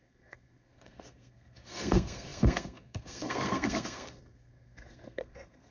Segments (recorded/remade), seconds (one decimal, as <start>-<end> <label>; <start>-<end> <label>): 0.0-5.7 remade